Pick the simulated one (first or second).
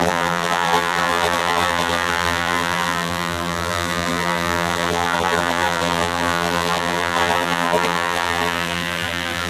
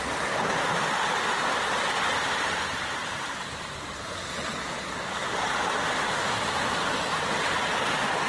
first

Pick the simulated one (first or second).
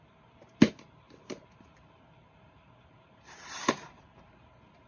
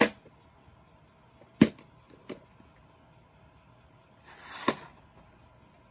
first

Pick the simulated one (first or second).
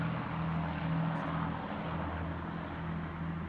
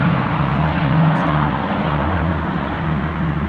second